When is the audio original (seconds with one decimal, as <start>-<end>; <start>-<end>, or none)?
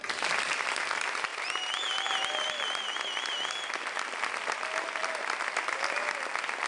0.0-6.7